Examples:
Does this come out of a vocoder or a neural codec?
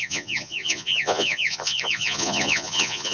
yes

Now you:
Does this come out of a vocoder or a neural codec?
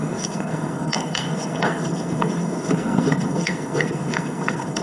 yes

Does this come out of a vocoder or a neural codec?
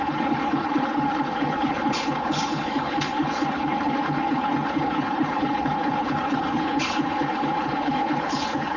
yes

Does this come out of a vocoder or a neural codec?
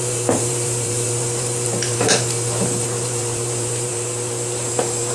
yes